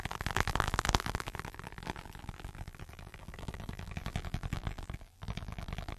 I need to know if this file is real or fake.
fake